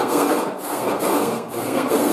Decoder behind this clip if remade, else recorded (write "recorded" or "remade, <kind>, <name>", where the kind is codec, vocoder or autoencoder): remade, codec, SNAC